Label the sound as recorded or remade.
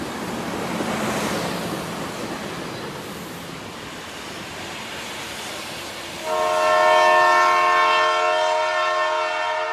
recorded